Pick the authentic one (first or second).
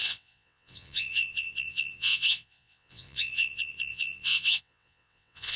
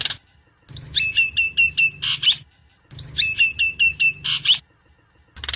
second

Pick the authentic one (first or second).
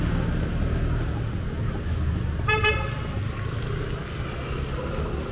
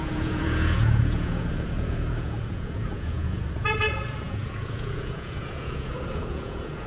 first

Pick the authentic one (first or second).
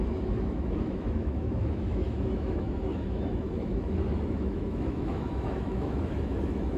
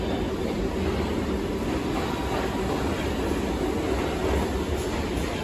second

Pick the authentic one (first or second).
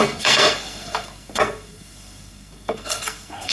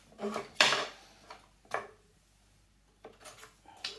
second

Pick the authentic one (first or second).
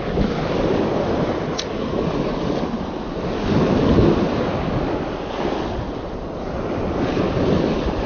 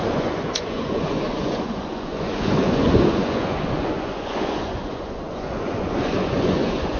first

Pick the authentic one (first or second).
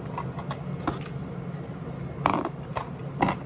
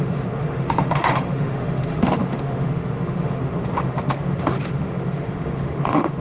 first